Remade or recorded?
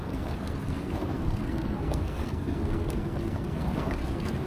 remade